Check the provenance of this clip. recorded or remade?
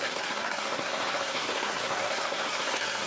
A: remade